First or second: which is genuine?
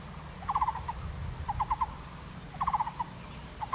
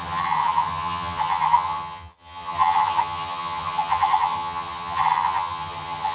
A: first